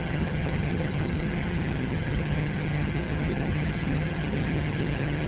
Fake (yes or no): yes